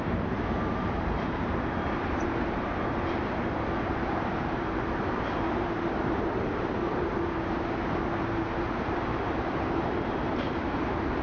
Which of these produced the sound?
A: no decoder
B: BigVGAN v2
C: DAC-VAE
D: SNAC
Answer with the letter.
B